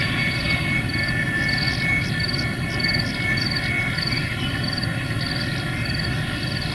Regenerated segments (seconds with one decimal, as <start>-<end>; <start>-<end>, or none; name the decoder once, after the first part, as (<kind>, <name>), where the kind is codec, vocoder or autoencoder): none